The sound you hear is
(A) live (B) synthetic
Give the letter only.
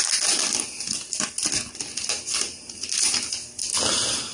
A